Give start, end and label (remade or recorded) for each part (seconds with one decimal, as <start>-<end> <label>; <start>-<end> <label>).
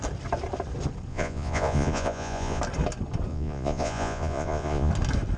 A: 0.0-1.1 recorded; 1.1-2.6 remade; 2.6-3.3 recorded; 3.3-4.9 remade; 4.9-5.4 recorded